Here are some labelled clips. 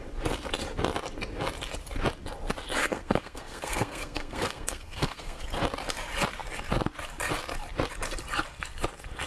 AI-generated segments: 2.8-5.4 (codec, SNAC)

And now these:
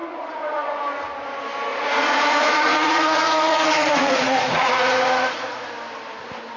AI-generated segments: 0.0-0.8 (vocoder, Vocos); 1.7-5.7

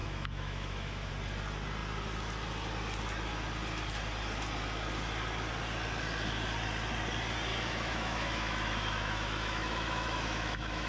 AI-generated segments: 0.0-1.1 (autoencoder, DAC-VAE); 7.5-10.9

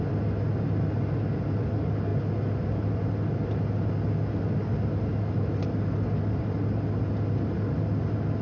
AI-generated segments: 5.1-5.6 (autoencoder, DAC-VAE)

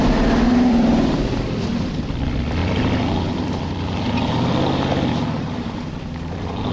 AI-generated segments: 0.0-6.7 (vocoder, BigVGAN v2)

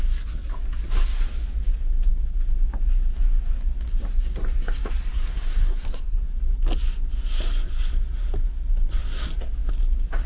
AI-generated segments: 5.1-6.2 (codec, SNAC)

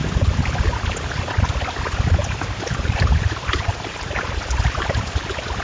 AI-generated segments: 2.2-4.4 (vocoder, BigVGAN v2)

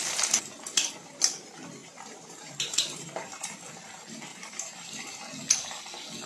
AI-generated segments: 1.8-3.7 (vocoder, BigVGAN v2); 4.3-5.2